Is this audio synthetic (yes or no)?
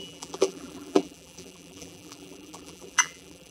yes